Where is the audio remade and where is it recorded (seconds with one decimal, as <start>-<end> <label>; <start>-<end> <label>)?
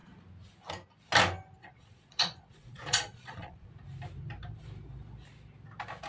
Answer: 0.0-1.6 recorded; 1.6-3.7 remade; 3.7-6.1 recorded